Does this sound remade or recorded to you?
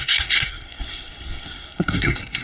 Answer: remade